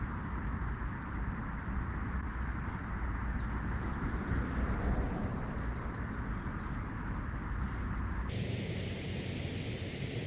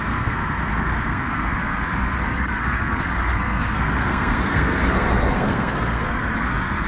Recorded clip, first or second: first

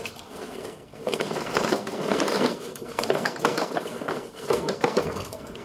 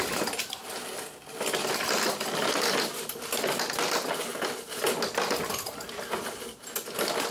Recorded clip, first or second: second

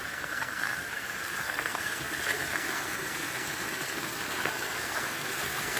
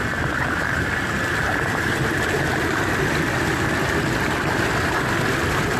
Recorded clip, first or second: second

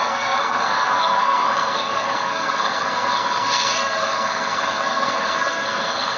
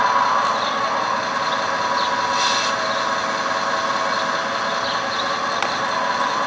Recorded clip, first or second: second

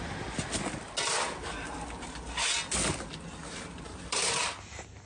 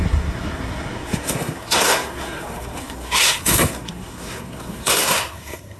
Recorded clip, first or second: first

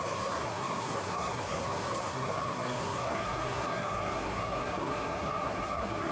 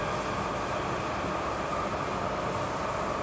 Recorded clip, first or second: second